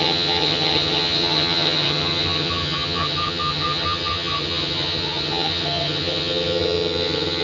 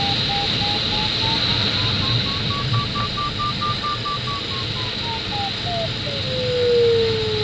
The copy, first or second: first